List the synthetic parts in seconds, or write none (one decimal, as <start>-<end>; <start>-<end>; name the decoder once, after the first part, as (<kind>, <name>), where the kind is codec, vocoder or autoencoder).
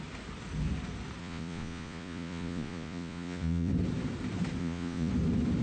1.2-3.7 (vocoder, Vocos); 4.6-5.1